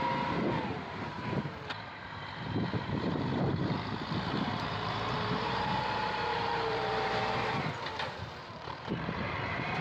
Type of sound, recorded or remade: remade